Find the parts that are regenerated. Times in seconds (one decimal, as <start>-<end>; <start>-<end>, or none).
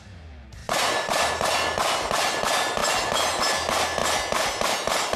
0.6-1.3